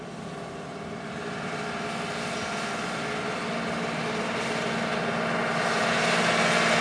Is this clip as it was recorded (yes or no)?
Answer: yes